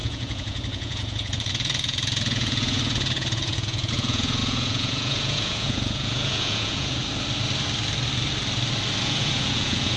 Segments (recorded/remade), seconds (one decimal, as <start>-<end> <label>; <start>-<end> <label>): 0.0-7.0 remade; 7.0-9.0 recorded; 9.0-10.0 remade